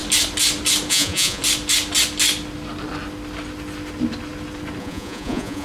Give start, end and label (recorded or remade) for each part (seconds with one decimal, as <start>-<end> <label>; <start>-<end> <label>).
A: 0.0-0.9 recorded; 0.9-1.4 remade; 1.4-4.8 recorded; 4.8-5.6 remade